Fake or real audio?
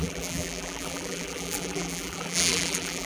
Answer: fake